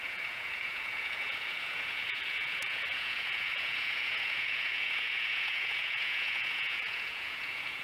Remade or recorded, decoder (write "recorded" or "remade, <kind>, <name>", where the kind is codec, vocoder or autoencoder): remade, vocoder, Vocos